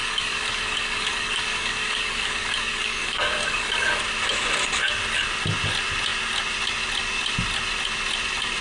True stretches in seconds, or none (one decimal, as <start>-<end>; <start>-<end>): 4.0-8.6